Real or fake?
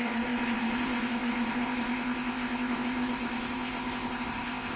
fake